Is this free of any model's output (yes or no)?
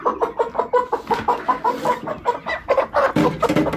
yes